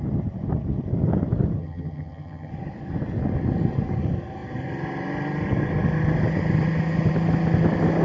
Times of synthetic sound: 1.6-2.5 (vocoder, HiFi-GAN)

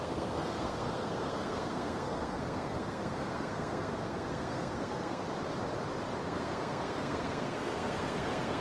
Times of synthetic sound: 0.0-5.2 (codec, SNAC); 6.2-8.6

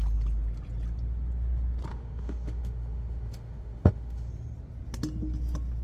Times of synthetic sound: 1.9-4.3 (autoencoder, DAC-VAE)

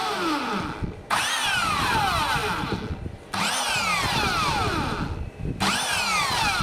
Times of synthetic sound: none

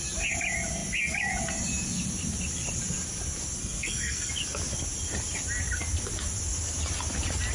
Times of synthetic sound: 3.6-4.3 (codec, SNAC)

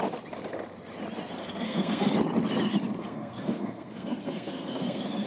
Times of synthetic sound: 1.4-2.1 (codec, SNAC); 3.0-5.3

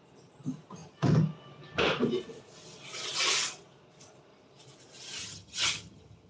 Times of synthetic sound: 5.2-6.3 (vocoder, HiFi-GAN)